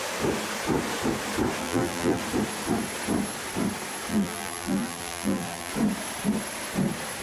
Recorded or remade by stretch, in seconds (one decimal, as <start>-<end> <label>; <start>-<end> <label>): 0.0-1.6 recorded; 1.6-2.2 remade; 2.2-4.1 recorded; 4.1-5.7 remade; 5.7-7.2 recorded

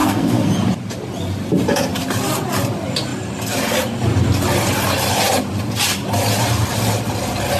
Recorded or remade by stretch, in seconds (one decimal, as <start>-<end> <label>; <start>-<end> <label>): 0.0-0.5 remade; 0.5-7.6 recorded

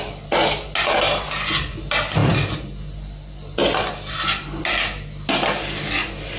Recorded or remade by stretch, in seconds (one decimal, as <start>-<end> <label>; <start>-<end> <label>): 0.0-6.4 recorded

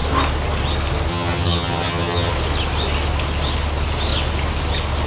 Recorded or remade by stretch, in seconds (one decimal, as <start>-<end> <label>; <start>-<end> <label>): 0.0-1.1 recorded; 1.1-2.3 remade; 2.3-5.1 recorded

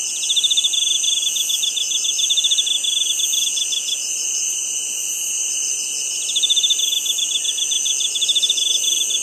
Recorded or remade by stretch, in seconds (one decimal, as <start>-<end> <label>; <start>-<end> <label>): 0.0-9.2 recorded